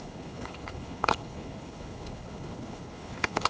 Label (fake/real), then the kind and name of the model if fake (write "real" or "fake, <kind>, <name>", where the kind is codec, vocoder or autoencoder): fake, codec, HILCodec